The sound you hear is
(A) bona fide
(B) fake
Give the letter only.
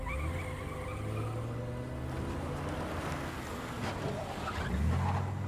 A